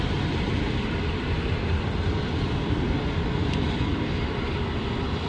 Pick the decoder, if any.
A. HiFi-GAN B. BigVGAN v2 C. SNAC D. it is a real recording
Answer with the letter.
D